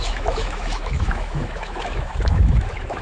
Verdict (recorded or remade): remade